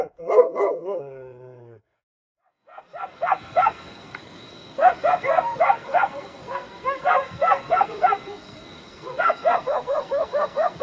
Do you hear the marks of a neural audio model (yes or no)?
yes